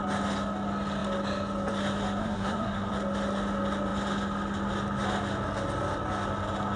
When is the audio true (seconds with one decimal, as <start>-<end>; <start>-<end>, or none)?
0.0-2.2; 2.9-6.8